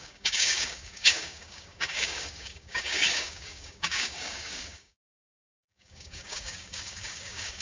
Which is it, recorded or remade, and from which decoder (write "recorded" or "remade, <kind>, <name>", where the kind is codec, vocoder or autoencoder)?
remade, codec, DAC